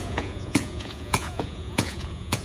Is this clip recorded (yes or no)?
no